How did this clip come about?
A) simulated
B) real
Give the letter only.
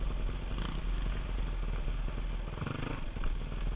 B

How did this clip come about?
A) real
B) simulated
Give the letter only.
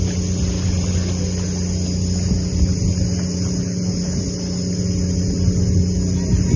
A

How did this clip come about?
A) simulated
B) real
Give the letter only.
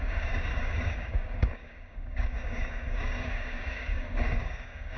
A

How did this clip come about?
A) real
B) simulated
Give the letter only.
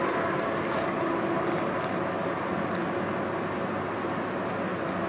A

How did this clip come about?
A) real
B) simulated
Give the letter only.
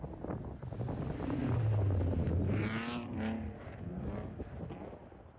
A